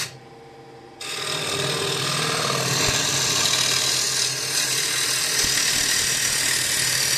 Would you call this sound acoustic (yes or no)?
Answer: yes